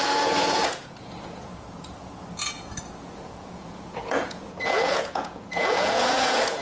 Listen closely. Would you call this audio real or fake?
fake